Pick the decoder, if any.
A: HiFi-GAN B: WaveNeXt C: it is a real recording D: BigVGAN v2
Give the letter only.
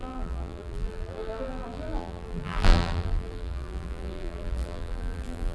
D